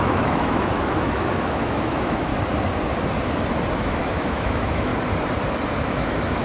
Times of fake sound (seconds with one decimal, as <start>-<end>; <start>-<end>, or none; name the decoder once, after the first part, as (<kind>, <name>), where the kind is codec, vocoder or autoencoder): 0.0-2.3 (autoencoder, DAC-VAE); 3.7-4.9; 5.8-6.4